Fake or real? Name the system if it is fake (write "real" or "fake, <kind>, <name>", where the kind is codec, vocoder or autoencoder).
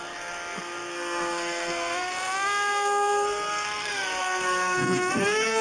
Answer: fake, codec, SNAC